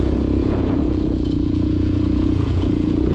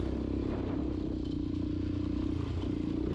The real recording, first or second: second